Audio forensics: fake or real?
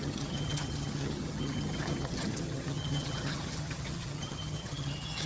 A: fake